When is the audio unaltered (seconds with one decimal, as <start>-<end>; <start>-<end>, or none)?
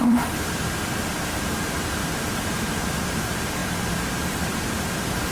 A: 0.6-1.1; 3.6-4.3